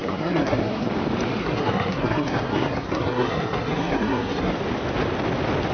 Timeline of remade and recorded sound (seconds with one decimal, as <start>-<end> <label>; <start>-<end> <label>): 0.0-0.9 remade; 0.9-1.4 recorded; 1.4-4.5 remade; 4.5-5.7 recorded